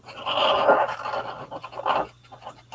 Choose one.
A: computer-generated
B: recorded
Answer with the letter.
B